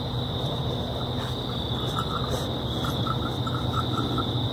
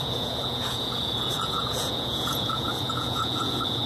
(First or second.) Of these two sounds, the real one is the first